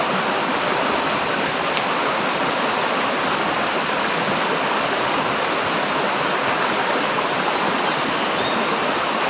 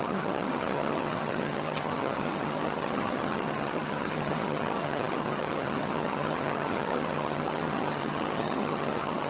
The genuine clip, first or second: first